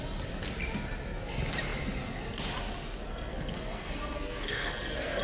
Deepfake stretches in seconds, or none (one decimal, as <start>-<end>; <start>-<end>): 3.1-5.2